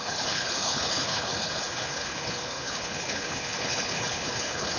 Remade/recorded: remade